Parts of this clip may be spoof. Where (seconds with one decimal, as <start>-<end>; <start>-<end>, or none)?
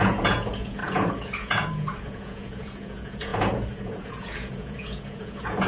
0.0-5.7